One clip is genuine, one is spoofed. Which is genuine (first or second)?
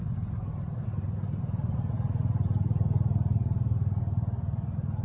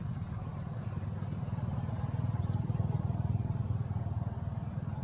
first